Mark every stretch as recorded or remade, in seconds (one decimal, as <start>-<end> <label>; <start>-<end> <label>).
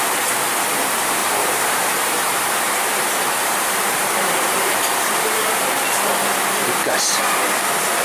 0.0-1.2 recorded; 1.2-5.2 remade; 5.2-8.0 recorded